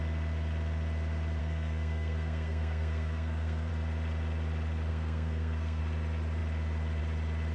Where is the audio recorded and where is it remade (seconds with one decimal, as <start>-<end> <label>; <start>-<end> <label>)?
0.0-1.4 recorded; 1.4-3.7 remade; 3.7-4.9 recorded; 4.9-5.8 remade; 5.8-7.5 recorded